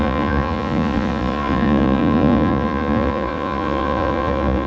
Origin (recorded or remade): remade